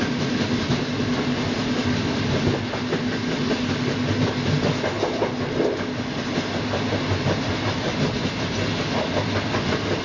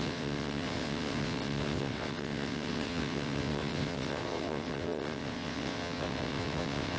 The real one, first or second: first